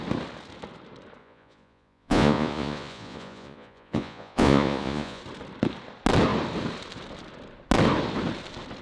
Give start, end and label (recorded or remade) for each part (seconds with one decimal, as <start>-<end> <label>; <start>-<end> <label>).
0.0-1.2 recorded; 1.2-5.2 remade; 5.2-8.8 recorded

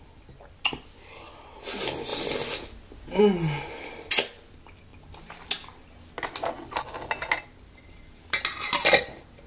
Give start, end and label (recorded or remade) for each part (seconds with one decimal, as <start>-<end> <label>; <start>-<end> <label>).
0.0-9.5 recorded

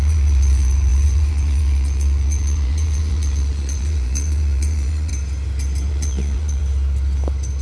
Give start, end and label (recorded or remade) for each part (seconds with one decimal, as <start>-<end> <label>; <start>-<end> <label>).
0.0-5.1 remade; 5.1-5.9 recorded; 5.9-6.6 remade; 6.6-7.6 recorded